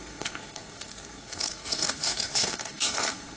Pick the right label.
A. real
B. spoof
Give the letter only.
B